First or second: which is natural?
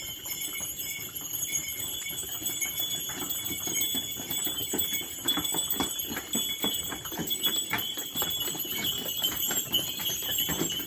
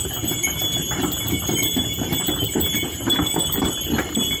second